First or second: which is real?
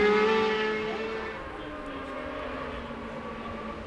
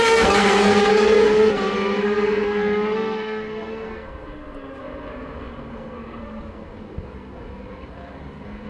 first